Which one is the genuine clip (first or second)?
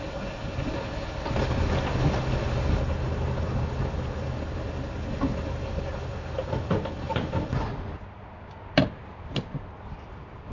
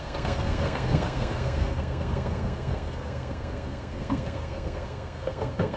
first